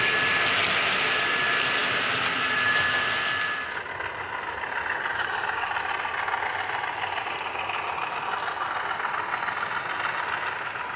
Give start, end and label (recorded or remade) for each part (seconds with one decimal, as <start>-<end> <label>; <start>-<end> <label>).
0.0-5.1 recorded; 5.1-5.7 remade; 5.7-11.0 recorded